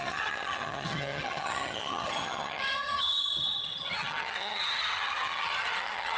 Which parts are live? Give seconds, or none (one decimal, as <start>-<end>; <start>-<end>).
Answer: none